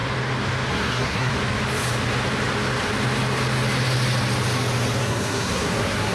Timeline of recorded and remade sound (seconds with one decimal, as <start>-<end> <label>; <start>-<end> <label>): 0.0-0.7 recorded; 0.7-1.3 remade; 1.3-5.0 recorded; 5.0-6.1 remade